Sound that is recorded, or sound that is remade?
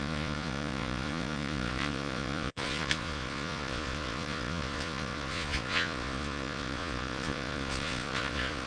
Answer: remade